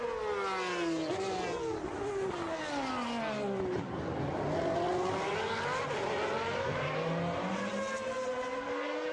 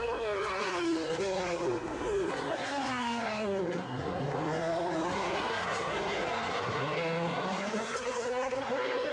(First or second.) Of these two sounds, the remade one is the second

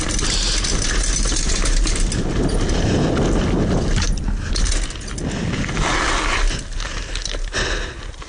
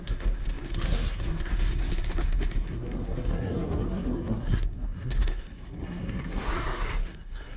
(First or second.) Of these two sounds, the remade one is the second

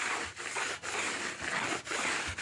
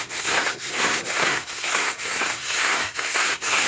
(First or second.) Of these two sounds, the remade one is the second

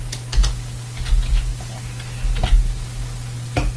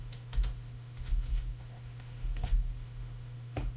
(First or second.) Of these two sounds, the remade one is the second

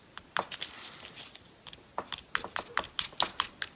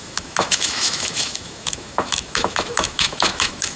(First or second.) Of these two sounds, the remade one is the second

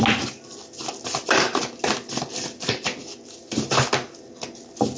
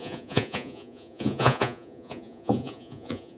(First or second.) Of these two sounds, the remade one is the second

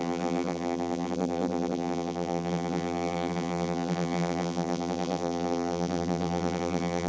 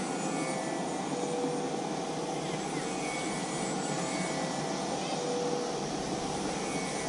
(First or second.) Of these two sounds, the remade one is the first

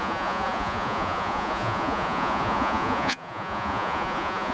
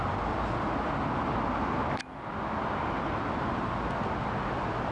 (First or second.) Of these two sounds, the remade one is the first